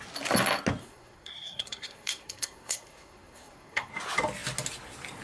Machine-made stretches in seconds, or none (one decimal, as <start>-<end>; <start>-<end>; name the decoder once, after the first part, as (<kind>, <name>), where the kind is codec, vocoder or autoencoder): 0.8-3.9 (codec, SNAC)